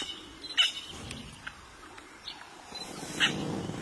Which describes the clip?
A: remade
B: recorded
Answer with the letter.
B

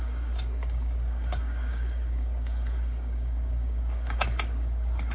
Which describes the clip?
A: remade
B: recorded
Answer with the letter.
A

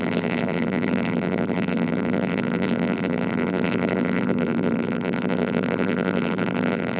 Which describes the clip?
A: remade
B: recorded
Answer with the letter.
A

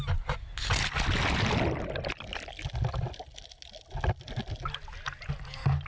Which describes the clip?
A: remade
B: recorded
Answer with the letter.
B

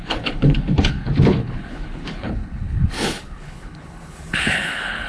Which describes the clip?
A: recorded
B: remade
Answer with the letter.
B